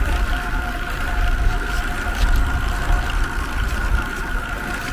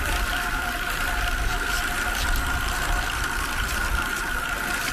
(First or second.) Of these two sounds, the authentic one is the first